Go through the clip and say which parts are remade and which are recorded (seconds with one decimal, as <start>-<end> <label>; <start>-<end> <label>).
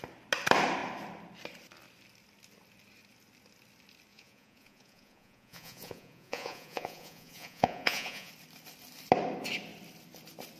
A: 0.0-4.1 recorded; 4.1-8.3 remade; 8.3-10.6 recorded